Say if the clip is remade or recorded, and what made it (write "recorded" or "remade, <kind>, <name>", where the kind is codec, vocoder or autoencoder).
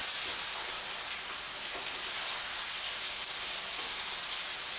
recorded